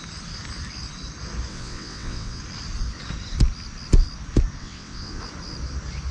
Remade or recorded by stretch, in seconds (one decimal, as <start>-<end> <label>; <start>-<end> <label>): 0.0-1.5 recorded; 1.5-2.4 remade; 2.4-4.6 recorded; 4.6-5.2 remade; 5.2-6.1 recorded